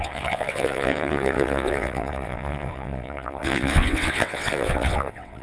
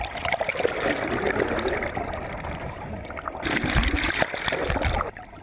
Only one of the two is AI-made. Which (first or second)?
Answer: first